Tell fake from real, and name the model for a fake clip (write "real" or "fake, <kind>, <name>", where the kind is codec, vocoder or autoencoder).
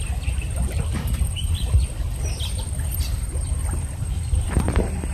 fake, vocoder, BigVGAN v2